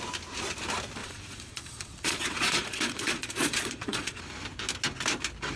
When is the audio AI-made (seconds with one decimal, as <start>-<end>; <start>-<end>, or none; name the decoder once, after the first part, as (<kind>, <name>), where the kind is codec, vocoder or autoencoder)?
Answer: 1.0-4.2 (vocoder, Vocos)